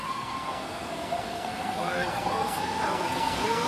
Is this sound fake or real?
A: fake